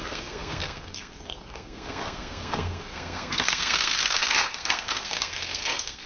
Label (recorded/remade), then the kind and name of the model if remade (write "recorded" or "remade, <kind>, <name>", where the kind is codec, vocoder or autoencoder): remade, codec, SNAC